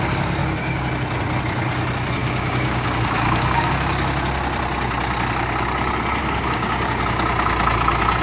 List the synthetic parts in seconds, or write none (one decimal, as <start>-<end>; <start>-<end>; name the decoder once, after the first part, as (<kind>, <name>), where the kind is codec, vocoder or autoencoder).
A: 0.4-0.9 (codec, DAC); 2.2-3.7; 6.2-7.0